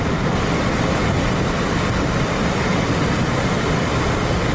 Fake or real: real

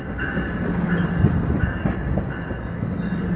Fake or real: real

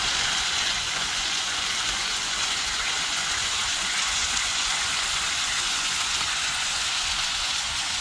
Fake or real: fake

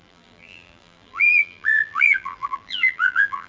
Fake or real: fake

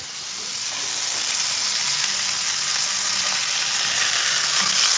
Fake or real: real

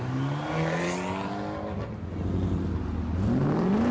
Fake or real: real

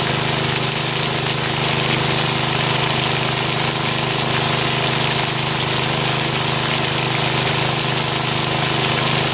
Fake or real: real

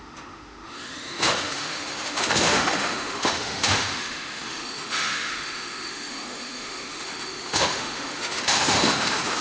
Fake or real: fake